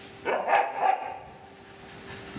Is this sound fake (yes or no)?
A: no